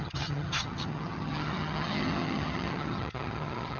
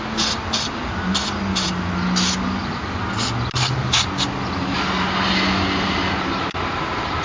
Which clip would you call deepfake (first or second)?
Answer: first